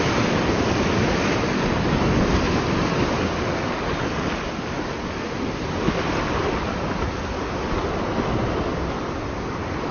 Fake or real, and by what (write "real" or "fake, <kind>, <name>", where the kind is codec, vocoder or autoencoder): real